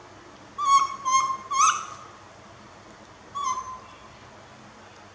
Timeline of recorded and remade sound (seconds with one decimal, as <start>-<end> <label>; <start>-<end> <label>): 0.0-5.1 recorded